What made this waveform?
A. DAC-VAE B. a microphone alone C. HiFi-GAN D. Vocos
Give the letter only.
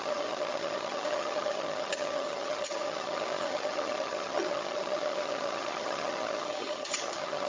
C